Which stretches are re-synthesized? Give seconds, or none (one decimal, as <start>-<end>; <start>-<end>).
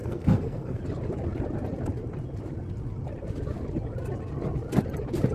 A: 0.0-0.8